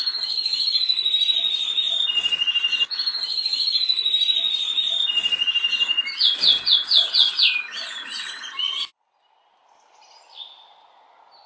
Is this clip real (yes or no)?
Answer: yes